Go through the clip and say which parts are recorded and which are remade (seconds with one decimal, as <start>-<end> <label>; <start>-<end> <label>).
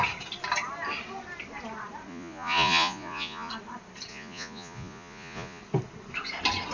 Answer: 0.0-2.1 recorded; 2.1-3.5 remade; 3.5-4.1 recorded; 4.1-5.6 remade; 5.6-6.7 recorded